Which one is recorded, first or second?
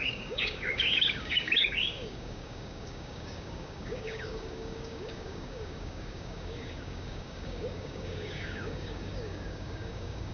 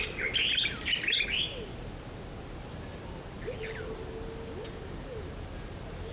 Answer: second